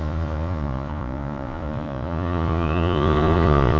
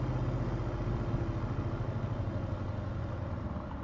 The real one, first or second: second